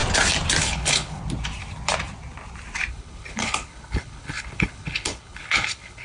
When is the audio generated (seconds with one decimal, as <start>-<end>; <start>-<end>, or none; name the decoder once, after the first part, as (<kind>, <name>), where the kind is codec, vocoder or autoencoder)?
0.6-1.2 (codec, HILCodec); 2.9-6.0